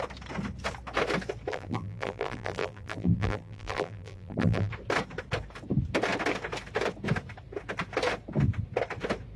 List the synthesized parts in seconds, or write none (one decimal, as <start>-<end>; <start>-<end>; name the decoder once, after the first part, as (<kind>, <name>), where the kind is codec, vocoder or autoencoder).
1.5-4.7 (vocoder, BigVGAN v2)